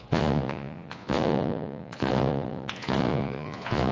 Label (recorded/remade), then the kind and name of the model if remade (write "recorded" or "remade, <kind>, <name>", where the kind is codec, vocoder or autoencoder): remade, vocoder, Vocos